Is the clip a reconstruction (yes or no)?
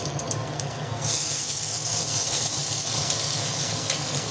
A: yes